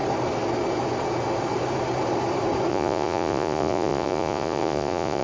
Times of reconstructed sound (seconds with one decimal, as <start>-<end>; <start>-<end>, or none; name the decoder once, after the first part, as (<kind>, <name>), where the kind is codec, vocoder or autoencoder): 2.7-5.2 (vocoder, Vocos)